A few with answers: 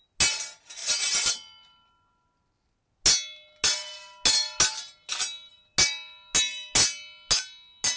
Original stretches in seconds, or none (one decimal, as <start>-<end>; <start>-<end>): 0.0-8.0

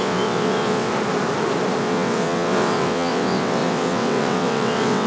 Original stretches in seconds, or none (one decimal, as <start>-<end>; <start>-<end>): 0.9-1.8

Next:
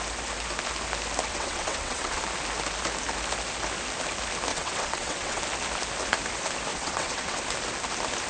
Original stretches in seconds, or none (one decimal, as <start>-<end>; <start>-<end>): 0.0-1.3; 2.2-4.5; 5.4-6.7; 7.4-8.3